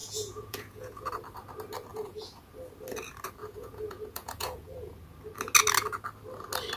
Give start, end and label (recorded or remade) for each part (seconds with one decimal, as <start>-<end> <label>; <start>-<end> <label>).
0.0-1.1 remade; 1.1-1.9 recorded; 1.9-2.5 remade; 2.5-3.4 recorded; 3.4-5.0 remade; 5.0-6.8 recorded